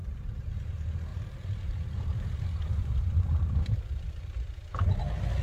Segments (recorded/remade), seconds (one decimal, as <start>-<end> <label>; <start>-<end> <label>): 0.0-1.1 recorded; 1.1-4.3 remade; 4.3-5.4 recorded

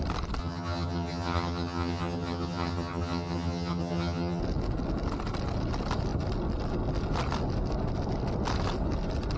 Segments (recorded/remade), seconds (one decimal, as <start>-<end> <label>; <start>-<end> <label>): 0.0-0.4 recorded; 0.4-4.4 remade; 4.4-9.4 recorded

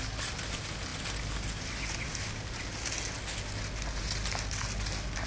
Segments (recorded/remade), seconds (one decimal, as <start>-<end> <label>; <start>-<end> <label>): 0.0-5.3 recorded

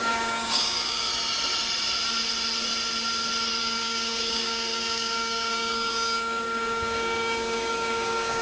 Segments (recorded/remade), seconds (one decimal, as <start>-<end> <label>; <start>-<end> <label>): 0.0-1.1 remade; 1.1-3.6 recorded; 3.6-8.4 remade

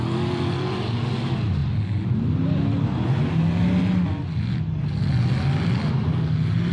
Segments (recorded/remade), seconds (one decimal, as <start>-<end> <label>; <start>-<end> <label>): 0.0-6.7 recorded

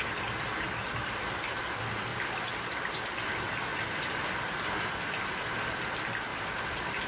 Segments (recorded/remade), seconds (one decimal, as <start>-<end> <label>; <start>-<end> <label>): 0.0-2.1 recorded; 2.1-3.3 remade; 3.3-6.3 recorded; 6.3-7.1 remade

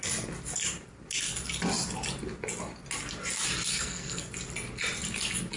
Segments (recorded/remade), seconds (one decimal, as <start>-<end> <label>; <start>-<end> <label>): 0.0-3.7 recorded; 3.7-4.3 remade; 4.3-5.6 recorded